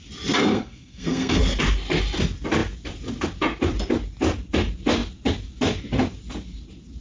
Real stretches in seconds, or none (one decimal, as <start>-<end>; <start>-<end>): 0.0-0.4; 1.4-7.0